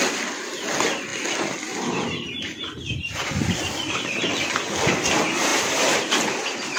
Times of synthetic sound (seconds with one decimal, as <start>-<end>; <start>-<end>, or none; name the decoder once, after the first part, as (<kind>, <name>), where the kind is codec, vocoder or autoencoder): none